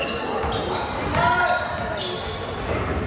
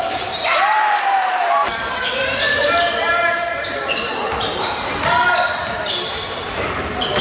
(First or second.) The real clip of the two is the first